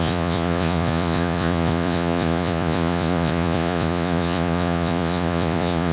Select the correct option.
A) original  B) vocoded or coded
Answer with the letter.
B